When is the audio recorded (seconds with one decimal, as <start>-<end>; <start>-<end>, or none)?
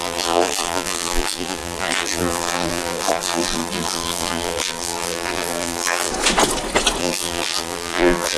6.1-7.0